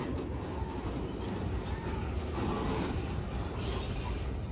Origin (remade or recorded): recorded